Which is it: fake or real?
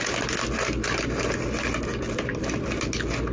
real